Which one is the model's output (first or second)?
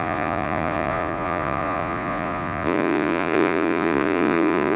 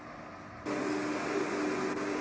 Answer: first